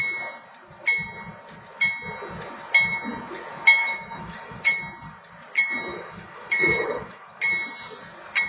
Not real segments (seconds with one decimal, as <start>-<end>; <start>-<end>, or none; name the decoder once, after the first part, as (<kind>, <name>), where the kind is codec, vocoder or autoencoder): 3.8-4.8 (autoencoder, DAC-VAE); 5.9-7.4